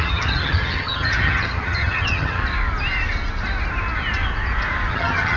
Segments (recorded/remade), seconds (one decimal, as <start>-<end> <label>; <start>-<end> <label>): 0.0-2.4 remade; 2.4-4.9 recorded; 4.9-5.4 remade